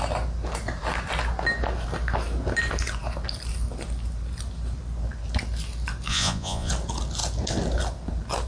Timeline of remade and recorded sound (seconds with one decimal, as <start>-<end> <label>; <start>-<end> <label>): 0.0-6.1 recorded; 6.1-6.7 remade; 6.7-8.5 recorded